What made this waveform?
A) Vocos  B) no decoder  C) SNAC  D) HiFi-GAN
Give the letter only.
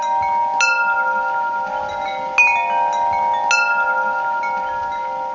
B